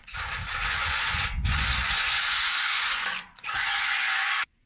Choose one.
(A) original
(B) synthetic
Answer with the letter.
B